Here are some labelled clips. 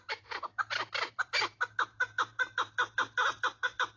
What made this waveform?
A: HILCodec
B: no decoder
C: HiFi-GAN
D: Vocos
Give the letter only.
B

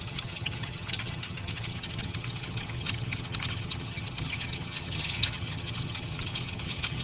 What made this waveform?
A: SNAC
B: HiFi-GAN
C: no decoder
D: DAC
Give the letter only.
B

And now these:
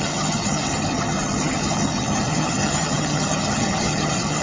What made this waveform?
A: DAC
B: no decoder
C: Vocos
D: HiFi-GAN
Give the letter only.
D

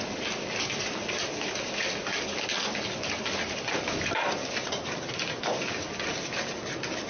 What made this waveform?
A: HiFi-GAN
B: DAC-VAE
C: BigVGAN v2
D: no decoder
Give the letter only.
D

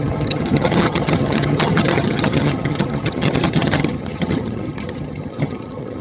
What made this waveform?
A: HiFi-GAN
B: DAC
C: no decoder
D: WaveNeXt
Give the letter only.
A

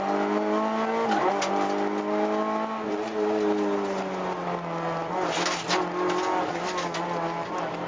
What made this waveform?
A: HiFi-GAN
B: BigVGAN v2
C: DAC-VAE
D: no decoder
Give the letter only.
D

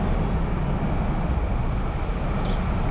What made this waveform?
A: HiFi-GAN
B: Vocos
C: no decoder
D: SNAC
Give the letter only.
C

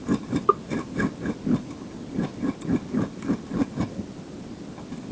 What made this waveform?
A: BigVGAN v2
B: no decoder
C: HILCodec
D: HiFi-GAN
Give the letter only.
B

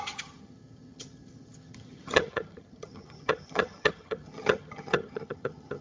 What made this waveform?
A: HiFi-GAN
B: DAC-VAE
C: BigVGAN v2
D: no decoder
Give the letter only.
A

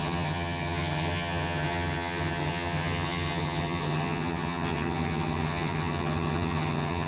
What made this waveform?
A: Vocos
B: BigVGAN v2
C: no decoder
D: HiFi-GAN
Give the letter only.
D